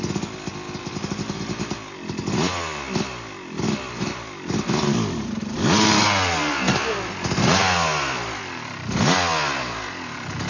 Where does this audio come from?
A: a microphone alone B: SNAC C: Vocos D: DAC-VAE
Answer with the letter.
A